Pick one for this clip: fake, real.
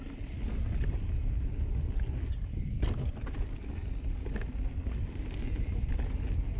real